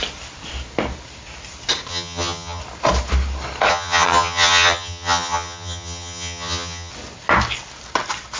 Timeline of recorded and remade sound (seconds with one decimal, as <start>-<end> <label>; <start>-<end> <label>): 0.0-1.9 recorded; 1.9-2.6 remade; 2.6-3.7 recorded; 3.7-6.9 remade; 6.9-8.4 recorded